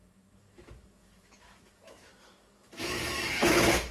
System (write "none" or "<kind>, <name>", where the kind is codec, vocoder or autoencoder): autoencoder, DAC-VAE